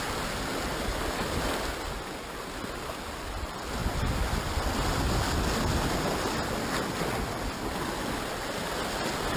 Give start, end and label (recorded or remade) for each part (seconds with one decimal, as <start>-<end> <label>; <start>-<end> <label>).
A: 0.0-9.4 recorded